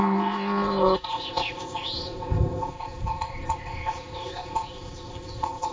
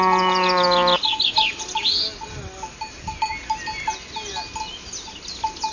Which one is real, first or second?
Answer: second